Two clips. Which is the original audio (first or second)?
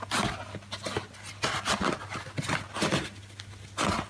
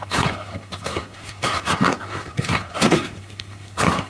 first